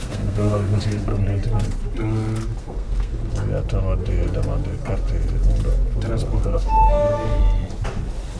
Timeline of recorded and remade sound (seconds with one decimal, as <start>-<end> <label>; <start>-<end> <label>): 0.0-1.1 remade; 1.1-2.6 recorded; 2.6-3.1 remade; 3.1-6.4 recorded; 6.4-7.4 remade; 7.4-8.4 recorded